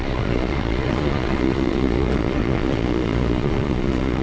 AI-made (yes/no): yes